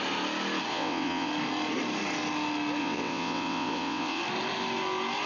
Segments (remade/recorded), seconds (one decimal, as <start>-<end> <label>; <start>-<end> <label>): 0.0-0.7 recorded; 0.7-1.3 remade; 1.3-2.8 recorded; 2.8-4.2 remade; 4.2-5.3 recorded